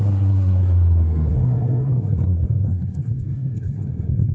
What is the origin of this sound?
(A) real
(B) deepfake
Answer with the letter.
B